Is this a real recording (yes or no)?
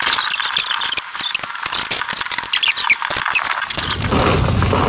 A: yes